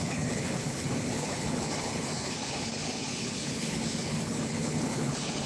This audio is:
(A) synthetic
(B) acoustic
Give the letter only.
A